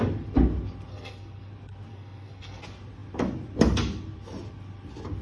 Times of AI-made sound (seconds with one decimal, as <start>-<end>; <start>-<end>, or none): 0.9-1.5; 1.9-2.6